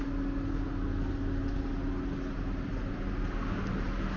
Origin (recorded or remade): recorded